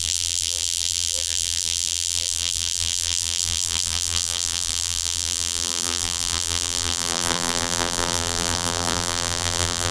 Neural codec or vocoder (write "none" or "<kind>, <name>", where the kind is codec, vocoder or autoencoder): vocoder, BigVGAN v2